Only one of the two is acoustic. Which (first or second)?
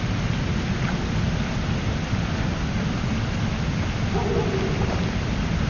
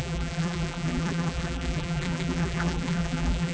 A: first